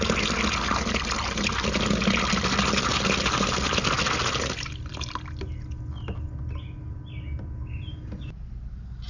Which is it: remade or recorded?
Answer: recorded